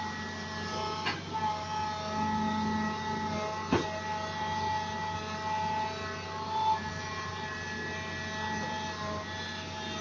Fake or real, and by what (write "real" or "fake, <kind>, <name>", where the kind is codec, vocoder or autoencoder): real